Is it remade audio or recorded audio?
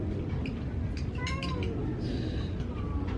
recorded